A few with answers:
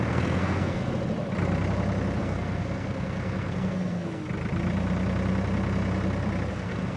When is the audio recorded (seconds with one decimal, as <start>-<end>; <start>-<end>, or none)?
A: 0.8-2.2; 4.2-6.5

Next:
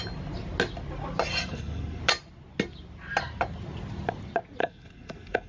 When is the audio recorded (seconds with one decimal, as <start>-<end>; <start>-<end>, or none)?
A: 0.0-1.4; 2.0-4.6

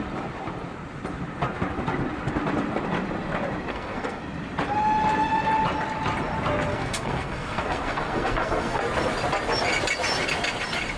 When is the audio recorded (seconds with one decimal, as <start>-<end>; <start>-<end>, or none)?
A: 0.0-3.7; 4.2-6.7; 8.8-11.0

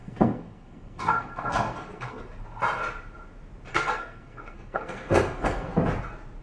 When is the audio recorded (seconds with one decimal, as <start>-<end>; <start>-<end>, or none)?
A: 2.2-3.7; 5.7-6.4

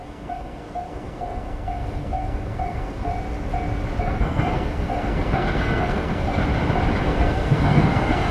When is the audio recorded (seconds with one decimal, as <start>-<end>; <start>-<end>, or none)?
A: 3.1-4.0; 6.4-7.0

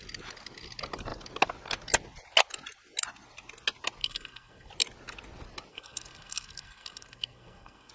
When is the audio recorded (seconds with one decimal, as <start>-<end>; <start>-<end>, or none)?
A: 0.0-4.0; 4.7-5.7